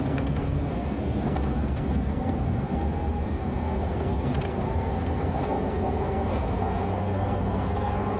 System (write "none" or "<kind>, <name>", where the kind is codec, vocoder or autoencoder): codec, SNAC